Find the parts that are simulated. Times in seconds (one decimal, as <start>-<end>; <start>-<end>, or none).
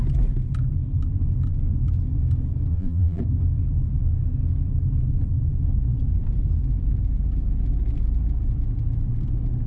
2.7-3.2